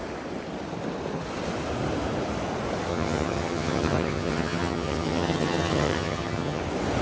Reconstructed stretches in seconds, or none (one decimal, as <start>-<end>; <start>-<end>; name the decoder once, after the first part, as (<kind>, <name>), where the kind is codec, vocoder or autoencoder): 2.9-6.6 (vocoder, HiFi-GAN)